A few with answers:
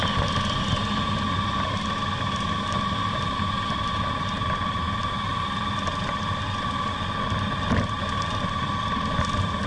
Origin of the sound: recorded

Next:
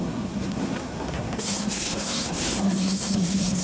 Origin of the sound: remade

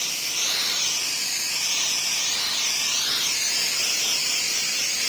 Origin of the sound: recorded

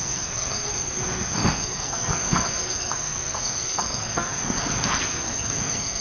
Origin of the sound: remade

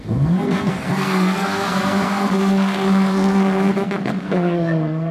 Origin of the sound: remade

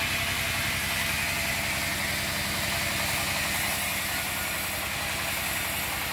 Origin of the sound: recorded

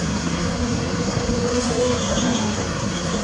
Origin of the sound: remade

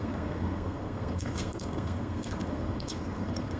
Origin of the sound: remade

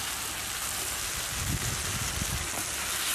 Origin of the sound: recorded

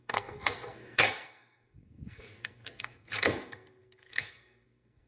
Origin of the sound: remade